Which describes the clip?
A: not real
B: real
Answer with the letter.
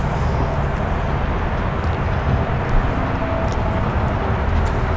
B